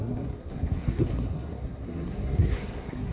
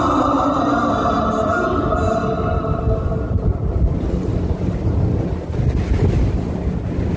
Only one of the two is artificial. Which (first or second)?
first